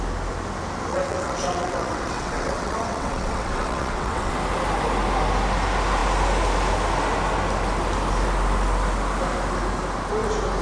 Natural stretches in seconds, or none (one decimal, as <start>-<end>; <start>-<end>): 0.0-0.9; 4.3-10.6